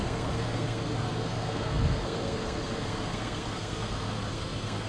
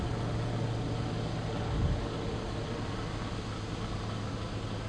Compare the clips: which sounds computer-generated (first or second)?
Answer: first